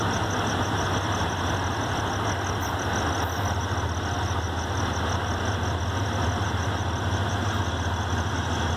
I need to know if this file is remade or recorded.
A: recorded